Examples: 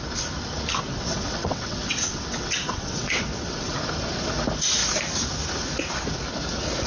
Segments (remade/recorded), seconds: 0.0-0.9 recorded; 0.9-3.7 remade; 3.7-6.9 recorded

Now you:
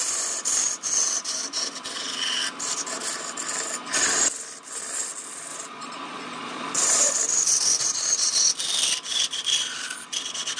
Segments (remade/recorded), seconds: 0.0-5.5 recorded; 5.5-7.1 remade; 7.1-10.6 recorded

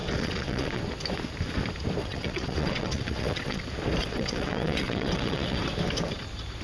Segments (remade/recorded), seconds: 0.0-0.8 remade; 0.8-2.0 recorded; 2.0-3.6 remade; 3.6-4.0 recorded; 4.0-5.6 remade; 5.6-6.6 recorded